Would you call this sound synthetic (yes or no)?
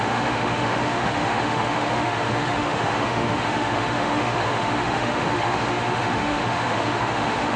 yes